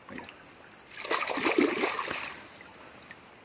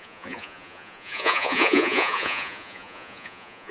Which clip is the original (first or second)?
first